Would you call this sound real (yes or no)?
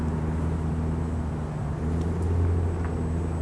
yes